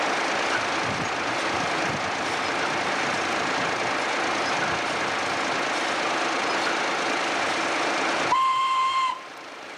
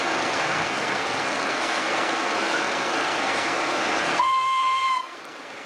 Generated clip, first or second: second